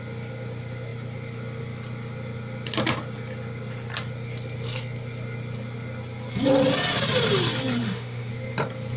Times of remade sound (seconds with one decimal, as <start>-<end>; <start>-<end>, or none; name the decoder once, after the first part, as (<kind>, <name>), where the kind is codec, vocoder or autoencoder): 7.8-8.3 (autoencoder, DAC-VAE)